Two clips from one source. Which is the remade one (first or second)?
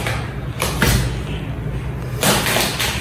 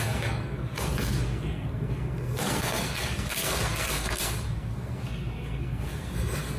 second